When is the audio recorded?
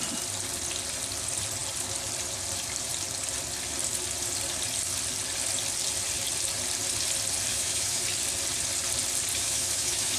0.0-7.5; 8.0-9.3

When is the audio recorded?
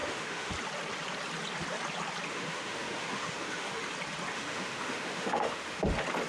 0.5-2.3; 3.9-4.3; 5.8-6.3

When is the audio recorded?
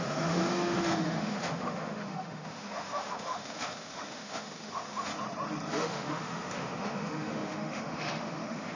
5.1-5.7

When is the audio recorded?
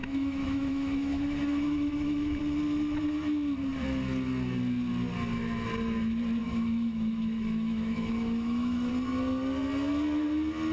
2.4-6.4; 8.9-10.7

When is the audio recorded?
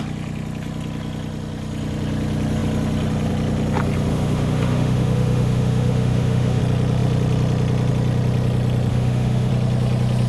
0.0-4.1; 6.6-8.9; 9.5-10.3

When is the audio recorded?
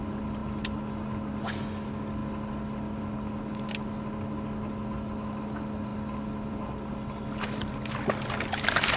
0.0-9.0